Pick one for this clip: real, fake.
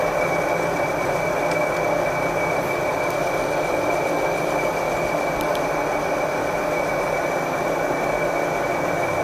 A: real